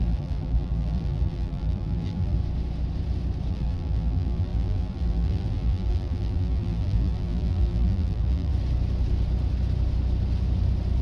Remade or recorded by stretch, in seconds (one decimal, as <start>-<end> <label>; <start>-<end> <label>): 0.0-2.4 remade; 2.4-3.5 recorded; 3.5-8.5 remade; 8.5-11.0 recorded